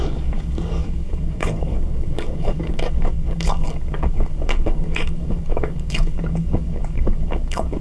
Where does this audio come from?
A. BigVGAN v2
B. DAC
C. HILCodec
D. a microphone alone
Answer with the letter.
B